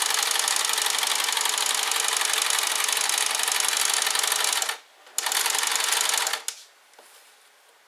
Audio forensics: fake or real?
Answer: real